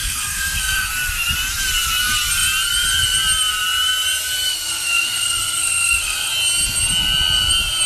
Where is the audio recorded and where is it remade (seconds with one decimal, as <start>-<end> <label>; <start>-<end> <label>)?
0.0-0.9 remade; 0.9-4.5 recorded; 4.5-6.3 remade; 6.3-7.9 recorded